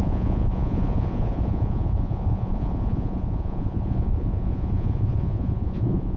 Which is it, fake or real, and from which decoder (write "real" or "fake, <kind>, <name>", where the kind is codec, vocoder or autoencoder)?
fake, vocoder, Vocos